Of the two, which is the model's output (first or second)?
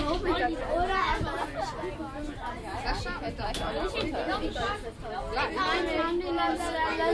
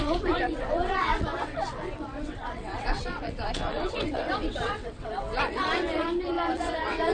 second